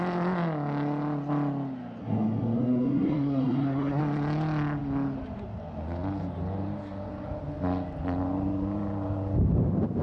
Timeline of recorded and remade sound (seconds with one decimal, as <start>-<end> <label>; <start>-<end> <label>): 0.0-2.0 recorded; 2.0-4.0 remade; 4.0-10.0 recorded